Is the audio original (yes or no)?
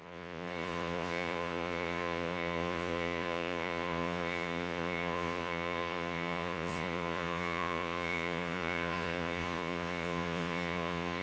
no